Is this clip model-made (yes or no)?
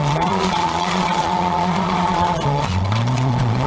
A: yes